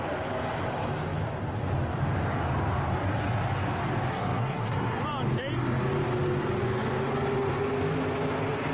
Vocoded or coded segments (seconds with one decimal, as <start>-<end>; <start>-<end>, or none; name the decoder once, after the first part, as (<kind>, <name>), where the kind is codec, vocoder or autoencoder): 4.1-5.0 (codec, SNAC)